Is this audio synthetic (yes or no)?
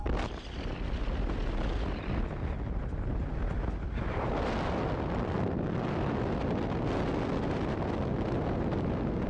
no